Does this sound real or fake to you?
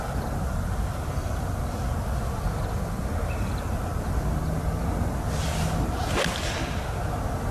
real